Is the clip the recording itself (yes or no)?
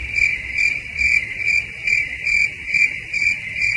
yes